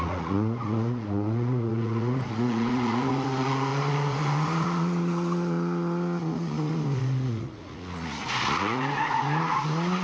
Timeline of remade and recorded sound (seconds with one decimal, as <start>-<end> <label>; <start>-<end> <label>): 0.0-10.0 remade